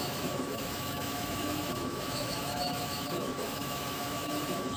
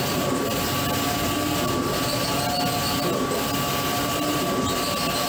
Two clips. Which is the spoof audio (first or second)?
first